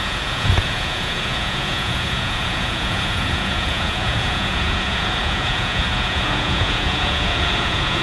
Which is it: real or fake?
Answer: fake